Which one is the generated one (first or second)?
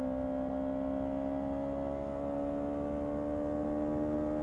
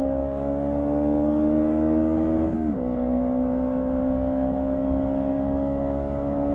second